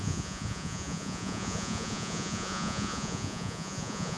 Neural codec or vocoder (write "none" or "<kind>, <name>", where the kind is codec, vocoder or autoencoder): vocoder, Vocos